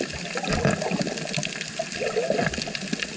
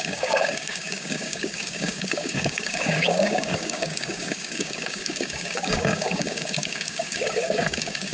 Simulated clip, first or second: second